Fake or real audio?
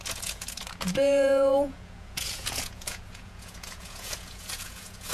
fake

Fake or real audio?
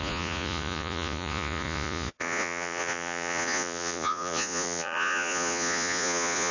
fake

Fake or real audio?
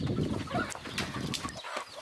real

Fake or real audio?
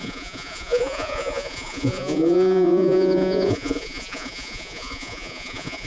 fake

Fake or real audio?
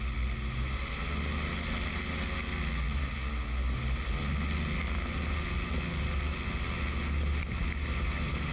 real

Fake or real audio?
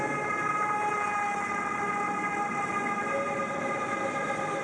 real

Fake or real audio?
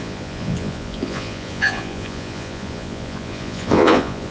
fake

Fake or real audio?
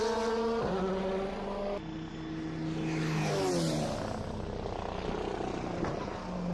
real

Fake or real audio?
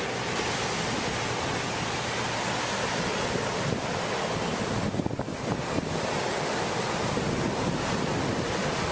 real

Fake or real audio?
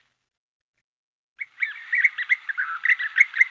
real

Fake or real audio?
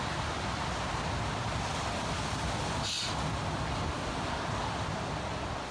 real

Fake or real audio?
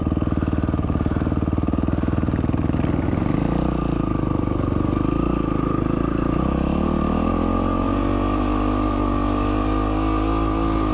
real